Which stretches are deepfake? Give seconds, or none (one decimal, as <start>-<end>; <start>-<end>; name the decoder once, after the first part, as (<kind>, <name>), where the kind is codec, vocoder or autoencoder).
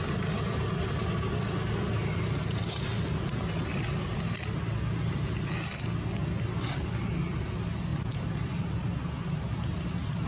none